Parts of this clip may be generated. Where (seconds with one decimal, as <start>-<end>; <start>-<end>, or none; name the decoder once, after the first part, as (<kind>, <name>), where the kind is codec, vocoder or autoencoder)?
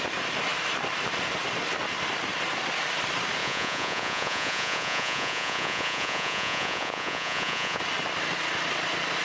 3.4-7.8 (vocoder, Vocos)